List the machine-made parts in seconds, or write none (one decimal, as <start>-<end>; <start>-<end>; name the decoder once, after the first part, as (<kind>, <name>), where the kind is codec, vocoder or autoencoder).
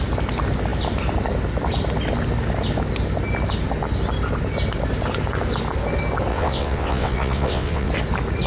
6.3-7.9 (vocoder, WaveNeXt)